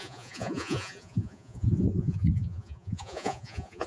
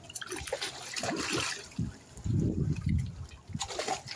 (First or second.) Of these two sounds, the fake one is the first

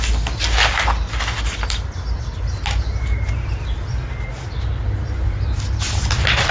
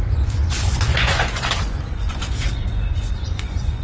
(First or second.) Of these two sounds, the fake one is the second